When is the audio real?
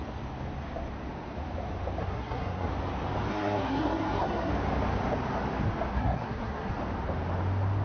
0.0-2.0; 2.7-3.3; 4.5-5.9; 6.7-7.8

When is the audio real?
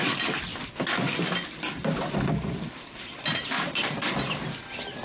0.5-2.1